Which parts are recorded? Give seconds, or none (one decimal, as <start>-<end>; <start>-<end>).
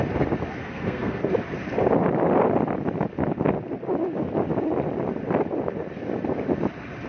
0.0-0.6; 1.2-7.1